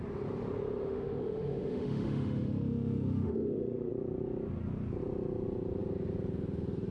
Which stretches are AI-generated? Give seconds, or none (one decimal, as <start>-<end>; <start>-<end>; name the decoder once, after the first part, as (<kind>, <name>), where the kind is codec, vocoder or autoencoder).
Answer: 0.8-3.9 (autoencoder, DAC-VAE)